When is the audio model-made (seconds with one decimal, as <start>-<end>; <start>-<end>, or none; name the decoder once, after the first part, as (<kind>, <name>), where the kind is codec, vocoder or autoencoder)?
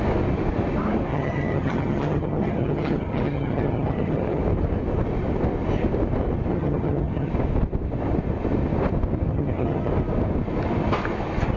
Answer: 1.1-4.4 (vocoder, HiFi-GAN); 6.5-7.3; 9.3-9.9